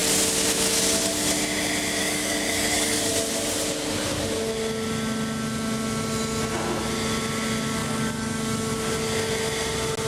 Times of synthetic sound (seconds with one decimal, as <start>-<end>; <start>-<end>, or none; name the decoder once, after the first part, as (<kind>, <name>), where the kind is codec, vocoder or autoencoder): 2.0-3.1 (codec, DAC); 7.8-8.7